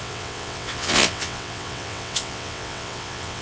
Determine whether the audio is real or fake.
fake